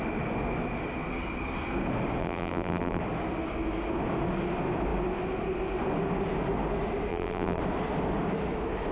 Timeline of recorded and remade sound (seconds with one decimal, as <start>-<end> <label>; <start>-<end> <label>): 0.0-2.2 recorded; 2.2-3.0 remade; 3.0-7.1 recorded; 7.1-7.6 remade; 7.6-8.9 recorded